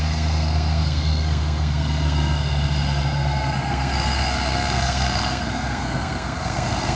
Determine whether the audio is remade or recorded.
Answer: remade